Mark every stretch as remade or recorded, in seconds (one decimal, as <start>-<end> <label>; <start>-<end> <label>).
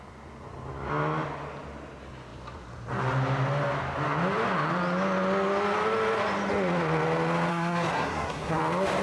0.0-7.5 recorded; 7.5-8.6 remade; 8.6-9.0 recorded